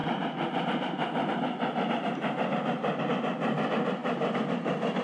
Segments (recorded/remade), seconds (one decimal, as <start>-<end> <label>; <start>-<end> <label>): 0.0-5.0 recorded

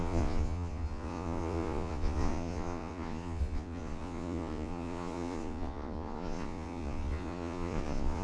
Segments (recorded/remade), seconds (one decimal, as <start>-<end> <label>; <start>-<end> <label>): 0.0-8.2 remade

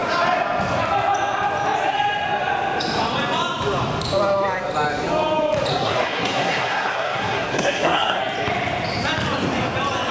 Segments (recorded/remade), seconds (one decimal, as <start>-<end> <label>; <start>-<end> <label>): 0.0-5.7 recorded; 5.7-8.2 remade; 8.2-10.1 recorded

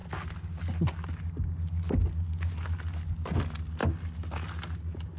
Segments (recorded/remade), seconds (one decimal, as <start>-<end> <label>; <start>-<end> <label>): 0.0-5.2 recorded

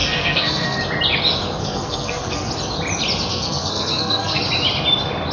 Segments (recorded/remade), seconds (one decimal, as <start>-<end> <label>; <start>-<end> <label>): 0.0-0.8 remade; 0.8-1.6 recorded; 1.6-2.5 remade; 2.5-3.3 recorded; 3.3-4.4 remade; 4.4-5.3 recorded